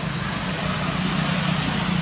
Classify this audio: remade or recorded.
recorded